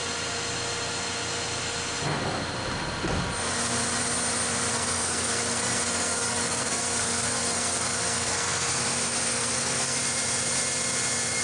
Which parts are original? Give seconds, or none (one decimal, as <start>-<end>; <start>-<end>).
0.0-4.7; 8.8-9.3; 10.0-11.4